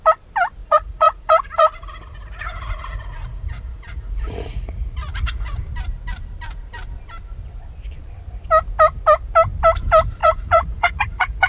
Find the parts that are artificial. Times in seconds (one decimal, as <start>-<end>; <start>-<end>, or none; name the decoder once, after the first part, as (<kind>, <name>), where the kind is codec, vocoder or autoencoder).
0.6-5.6 (vocoder, Vocos); 10.2-11.5